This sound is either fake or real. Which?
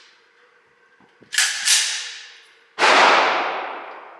real